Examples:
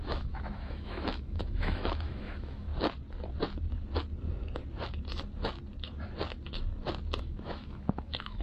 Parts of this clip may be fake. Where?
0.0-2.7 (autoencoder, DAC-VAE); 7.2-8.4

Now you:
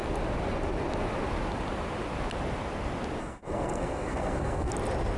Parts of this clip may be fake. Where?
3.2-4.7 (codec, SNAC)

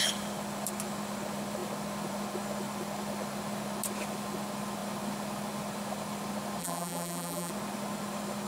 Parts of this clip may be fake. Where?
6.6-7.5 (vocoder, BigVGAN v2)